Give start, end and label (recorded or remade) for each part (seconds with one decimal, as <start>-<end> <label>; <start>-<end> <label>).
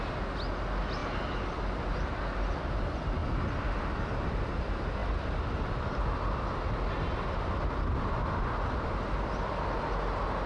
0.0-10.5 recorded